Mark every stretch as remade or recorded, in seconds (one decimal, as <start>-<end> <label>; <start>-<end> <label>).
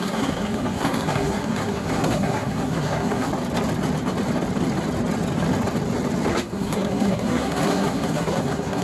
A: 0.0-3.3 remade; 3.3-6.3 recorded; 6.3-8.8 remade